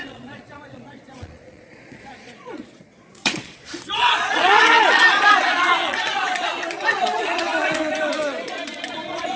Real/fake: fake